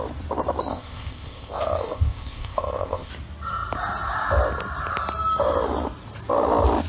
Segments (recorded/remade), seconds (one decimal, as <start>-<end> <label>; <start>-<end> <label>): 0.0-0.7 recorded; 0.7-3.1 remade; 3.1-6.9 recorded